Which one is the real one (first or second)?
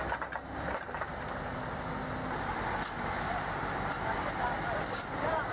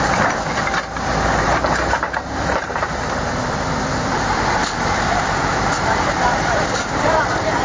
first